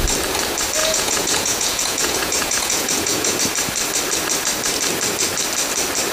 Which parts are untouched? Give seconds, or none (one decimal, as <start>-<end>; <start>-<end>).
0.0-0.8; 3.4-6.1